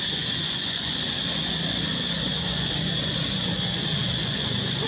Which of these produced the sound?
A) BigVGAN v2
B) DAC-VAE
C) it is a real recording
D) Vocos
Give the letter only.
D